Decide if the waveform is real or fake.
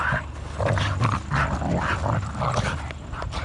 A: real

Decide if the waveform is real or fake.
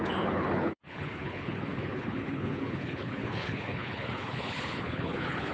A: fake